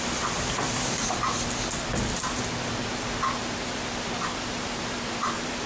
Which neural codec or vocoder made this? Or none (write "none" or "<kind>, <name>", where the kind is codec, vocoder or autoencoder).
vocoder, BigVGAN v2